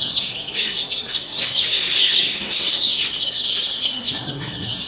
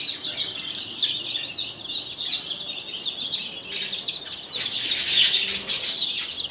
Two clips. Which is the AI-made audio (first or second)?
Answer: first